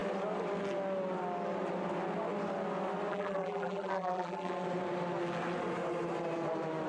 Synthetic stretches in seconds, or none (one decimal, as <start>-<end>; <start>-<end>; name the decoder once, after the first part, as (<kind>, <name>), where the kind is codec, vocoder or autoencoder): 3.1-4.5 (vocoder, BigVGAN v2)